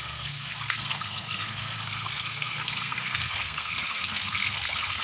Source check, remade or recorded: remade